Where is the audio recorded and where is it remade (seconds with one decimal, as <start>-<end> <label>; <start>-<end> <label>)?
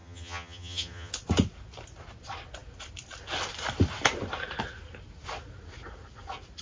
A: 0.0-1.1 remade; 1.1-6.6 recorded